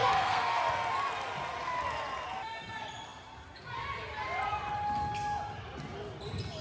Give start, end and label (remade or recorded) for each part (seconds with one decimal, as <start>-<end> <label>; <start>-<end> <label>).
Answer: 0.0-0.6 remade; 0.6-6.6 recorded